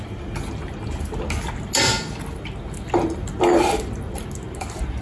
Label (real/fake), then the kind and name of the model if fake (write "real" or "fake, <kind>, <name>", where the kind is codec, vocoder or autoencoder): real